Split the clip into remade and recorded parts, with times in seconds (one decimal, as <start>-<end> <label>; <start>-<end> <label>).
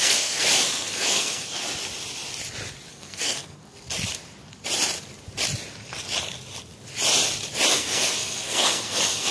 0.0-1.6 remade; 1.6-2.9 recorded; 2.9-3.6 remade; 3.6-7.7 recorded; 7.7-9.3 remade